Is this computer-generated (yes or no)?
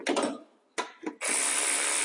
no